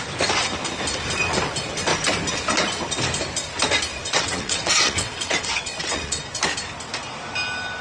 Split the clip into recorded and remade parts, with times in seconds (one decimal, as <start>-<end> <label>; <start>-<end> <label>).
0.0-4.0 recorded; 4.0-6.2 remade; 6.2-7.8 recorded